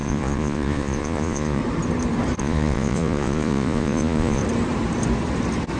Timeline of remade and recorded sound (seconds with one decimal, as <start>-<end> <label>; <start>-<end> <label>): 0.0-1.6 remade; 1.6-2.4 recorded; 2.4-4.4 remade; 4.4-5.8 recorded